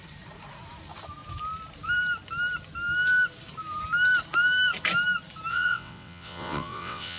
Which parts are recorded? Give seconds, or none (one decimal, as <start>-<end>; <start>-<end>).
0.0-5.5